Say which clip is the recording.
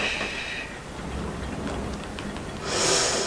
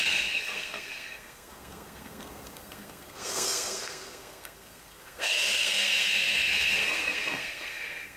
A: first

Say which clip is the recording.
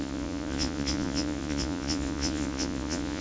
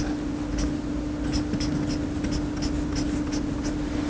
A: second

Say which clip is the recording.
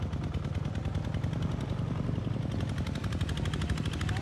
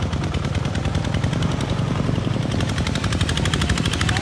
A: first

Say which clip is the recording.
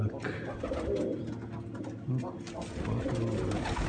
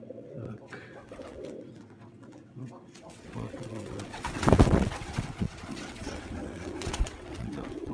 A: first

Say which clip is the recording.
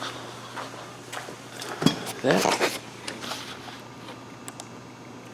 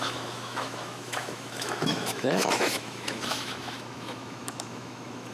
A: first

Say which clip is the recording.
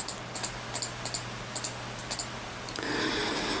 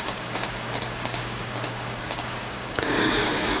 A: first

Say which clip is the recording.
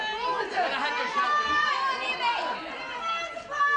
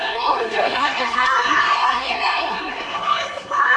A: first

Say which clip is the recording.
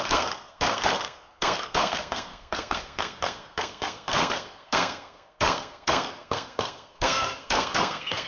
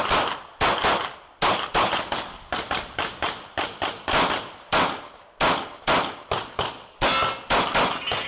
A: second